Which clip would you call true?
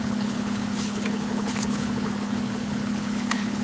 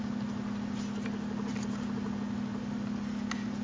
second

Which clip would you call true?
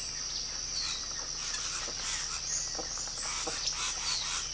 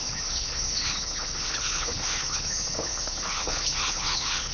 first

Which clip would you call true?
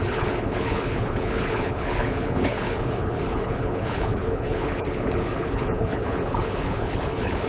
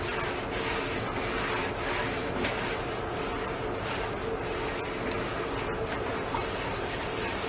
second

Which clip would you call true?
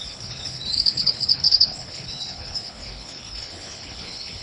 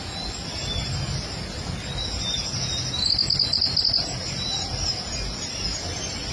second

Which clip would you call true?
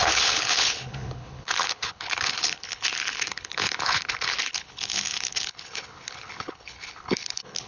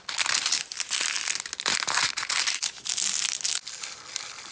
second